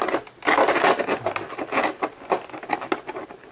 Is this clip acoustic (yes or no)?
yes